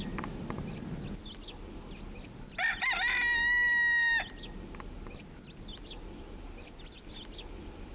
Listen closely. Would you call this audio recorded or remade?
recorded